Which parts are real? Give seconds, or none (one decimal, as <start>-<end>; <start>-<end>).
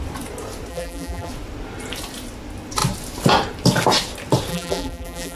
0.0-0.7; 1.3-4.5